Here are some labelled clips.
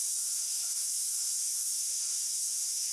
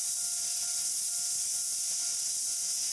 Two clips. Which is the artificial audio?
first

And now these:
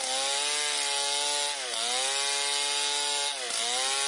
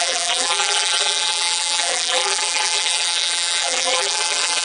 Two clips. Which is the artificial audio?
second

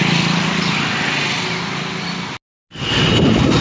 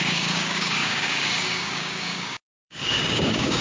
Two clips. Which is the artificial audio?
second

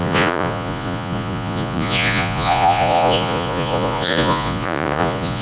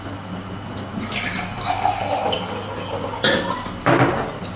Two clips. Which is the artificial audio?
first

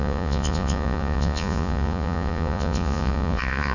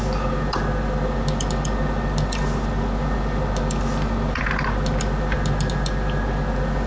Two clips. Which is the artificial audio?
first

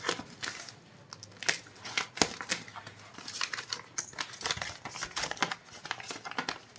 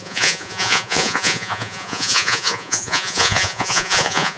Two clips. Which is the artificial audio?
second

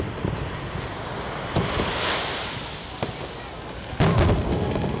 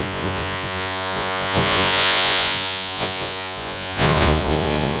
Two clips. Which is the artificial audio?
second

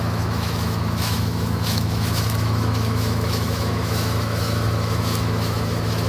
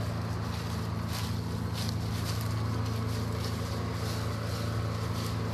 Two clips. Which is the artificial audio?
first